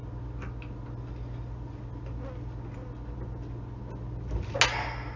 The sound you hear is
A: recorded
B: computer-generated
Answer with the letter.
A